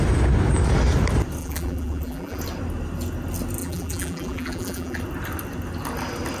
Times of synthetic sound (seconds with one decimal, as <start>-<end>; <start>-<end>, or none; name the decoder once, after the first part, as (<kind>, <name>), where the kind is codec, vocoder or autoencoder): 1.4-2.4 (vocoder, BigVGAN v2); 3.6-5.0